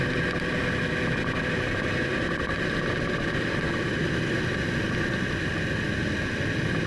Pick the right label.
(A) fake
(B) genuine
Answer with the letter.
B